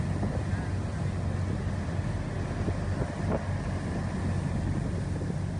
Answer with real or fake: real